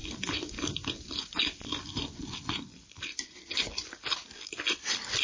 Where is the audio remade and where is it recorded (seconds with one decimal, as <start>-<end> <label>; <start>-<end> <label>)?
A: 0.0-5.2 recorded